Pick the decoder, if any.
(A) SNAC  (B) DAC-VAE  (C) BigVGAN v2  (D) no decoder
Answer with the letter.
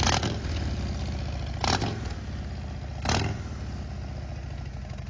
D